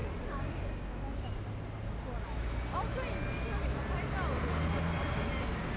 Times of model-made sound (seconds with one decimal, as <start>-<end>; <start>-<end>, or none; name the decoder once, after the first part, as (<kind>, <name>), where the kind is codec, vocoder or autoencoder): none